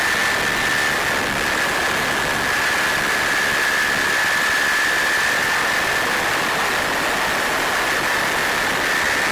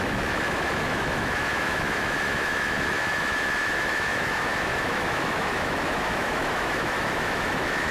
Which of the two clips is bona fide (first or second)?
first